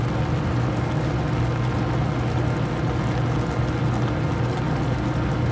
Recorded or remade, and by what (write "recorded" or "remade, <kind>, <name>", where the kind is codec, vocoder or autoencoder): recorded